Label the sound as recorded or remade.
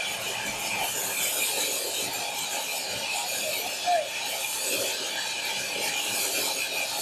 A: recorded